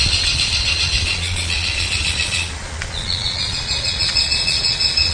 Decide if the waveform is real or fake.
fake